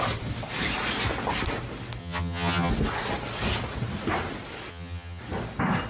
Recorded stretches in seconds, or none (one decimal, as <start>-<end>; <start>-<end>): 0.0-2.0; 2.7-4.7; 5.2-5.9

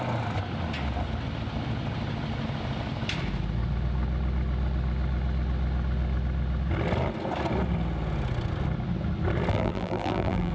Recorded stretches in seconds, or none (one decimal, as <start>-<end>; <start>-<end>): 0.0-9.5

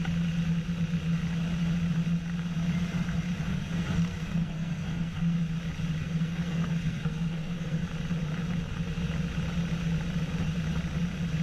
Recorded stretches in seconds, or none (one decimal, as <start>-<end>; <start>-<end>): 0.0-3.5; 5.4-6.0; 7.8-11.4